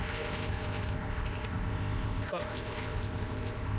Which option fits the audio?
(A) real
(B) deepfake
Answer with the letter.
B